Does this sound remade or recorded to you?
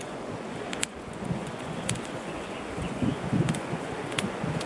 remade